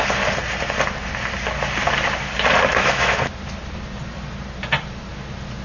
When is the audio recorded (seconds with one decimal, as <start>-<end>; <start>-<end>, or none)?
0.0-2.7; 3.2-5.6